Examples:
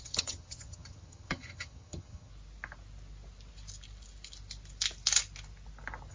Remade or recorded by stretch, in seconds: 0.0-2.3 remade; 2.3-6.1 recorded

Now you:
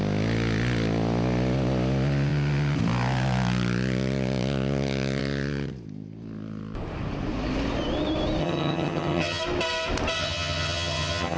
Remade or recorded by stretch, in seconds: 0.0-8.4 recorded; 8.4-9.4 remade; 9.4-10.2 recorded; 10.2-11.4 remade

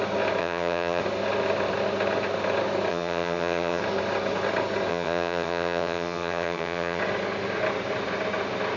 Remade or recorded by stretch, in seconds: 0.0-0.4 recorded; 0.4-1.0 remade; 1.0-2.9 recorded; 2.9-3.8 remade; 3.8-4.9 recorded; 4.9-7.0 remade; 7.0-8.8 recorded

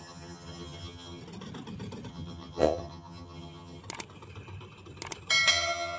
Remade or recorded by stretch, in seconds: 0.0-1.2 remade; 1.2-2.1 recorded; 2.1-3.8 remade; 3.8-5.5 recorded; 5.5-6.0 remade

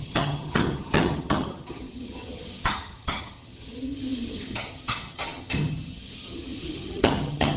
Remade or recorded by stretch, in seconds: 0.0-7.6 remade